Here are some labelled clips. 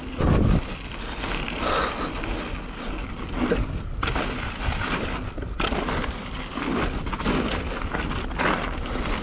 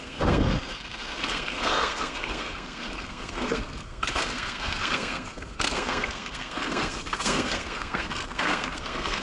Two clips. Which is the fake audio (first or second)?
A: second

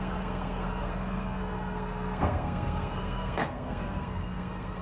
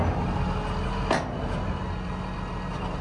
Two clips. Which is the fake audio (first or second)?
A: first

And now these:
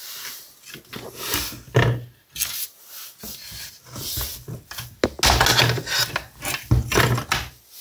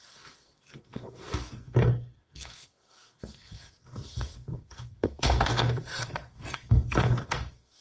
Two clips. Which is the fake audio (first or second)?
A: second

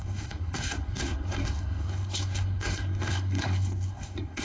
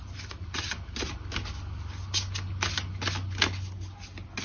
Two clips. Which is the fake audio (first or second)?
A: first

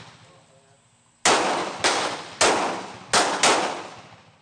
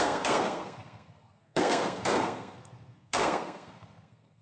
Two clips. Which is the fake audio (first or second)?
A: second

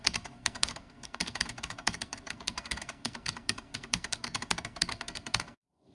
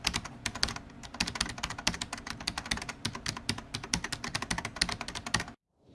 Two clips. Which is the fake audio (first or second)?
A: first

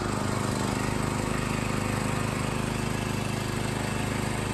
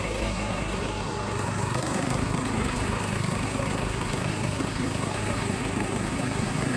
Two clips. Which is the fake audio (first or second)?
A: second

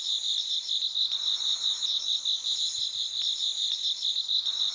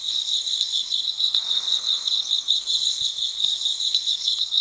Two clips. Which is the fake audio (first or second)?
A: second